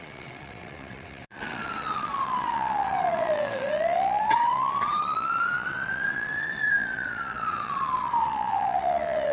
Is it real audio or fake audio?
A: fake